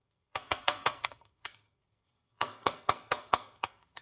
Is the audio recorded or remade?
remade